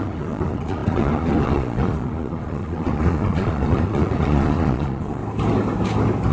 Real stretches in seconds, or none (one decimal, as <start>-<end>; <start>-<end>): 5.2-6.3